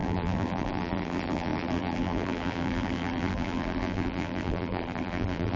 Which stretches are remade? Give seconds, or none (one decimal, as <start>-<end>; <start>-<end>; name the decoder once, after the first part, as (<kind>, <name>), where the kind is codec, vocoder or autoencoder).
0.0-5.6 (vocoder, BigVGAN v2)